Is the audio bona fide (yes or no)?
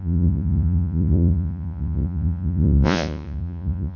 no